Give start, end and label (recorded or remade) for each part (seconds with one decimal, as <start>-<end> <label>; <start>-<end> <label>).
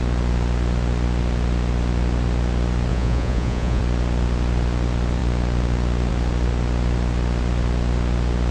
0.0-2.9 recorded; 2.9-3.8 remade; 3.8-8.5 recorded